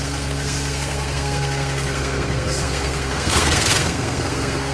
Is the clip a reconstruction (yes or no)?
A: yes